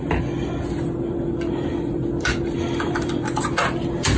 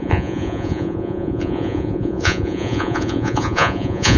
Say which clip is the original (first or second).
first